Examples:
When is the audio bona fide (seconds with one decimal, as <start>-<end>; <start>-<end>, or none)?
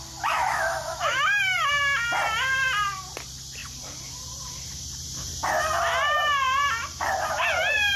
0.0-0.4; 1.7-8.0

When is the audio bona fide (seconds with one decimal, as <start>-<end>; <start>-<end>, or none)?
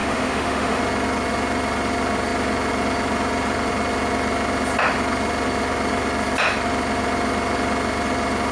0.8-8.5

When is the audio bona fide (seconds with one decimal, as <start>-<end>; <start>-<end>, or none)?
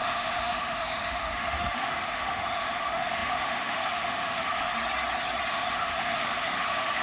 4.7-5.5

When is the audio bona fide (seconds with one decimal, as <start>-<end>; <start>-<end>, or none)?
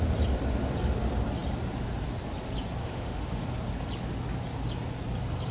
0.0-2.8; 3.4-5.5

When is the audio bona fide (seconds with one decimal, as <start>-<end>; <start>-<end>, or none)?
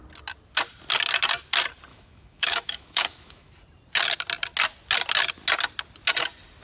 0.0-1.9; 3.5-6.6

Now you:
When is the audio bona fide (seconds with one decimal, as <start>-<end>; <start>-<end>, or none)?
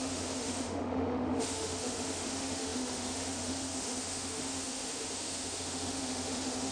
none